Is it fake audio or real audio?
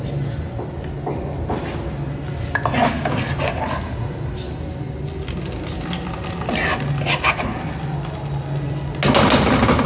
real